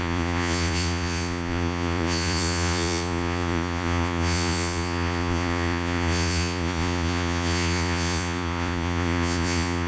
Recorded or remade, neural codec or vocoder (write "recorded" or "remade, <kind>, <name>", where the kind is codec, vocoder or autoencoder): remade, vocoder, Vocos